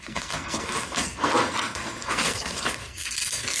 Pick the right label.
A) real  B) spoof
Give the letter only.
B